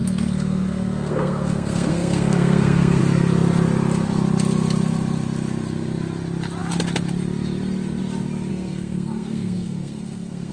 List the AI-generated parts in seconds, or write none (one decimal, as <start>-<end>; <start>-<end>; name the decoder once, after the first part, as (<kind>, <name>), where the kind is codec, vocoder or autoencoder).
0.0-3.0 (codec, SNAC); 8.5-10.5